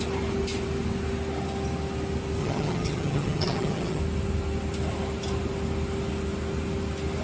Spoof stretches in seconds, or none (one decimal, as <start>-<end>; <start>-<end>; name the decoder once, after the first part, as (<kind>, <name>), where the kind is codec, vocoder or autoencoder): 2.4-4.0 (vocoder, HiFi-GAN)